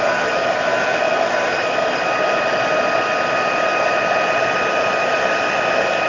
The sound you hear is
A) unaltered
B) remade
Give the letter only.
A